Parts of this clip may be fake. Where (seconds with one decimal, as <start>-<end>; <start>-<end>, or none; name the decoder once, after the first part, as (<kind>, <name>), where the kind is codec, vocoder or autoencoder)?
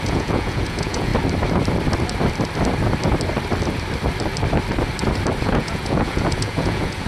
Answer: 0.0-1.1 (vocoder, Vocos); 5.4-7.1